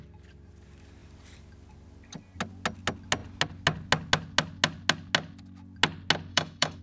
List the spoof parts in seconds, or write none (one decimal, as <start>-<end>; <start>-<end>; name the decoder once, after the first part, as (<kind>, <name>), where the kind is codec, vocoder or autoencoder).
6.3-6.8 (autoencoder, DAC-VAE)